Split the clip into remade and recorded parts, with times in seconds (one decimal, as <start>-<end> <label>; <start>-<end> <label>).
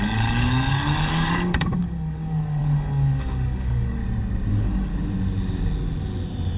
0.0-4.0 remade; 4.0-4.5 recorded; 4.5-4.9 remade; 4.9-6.6 recorded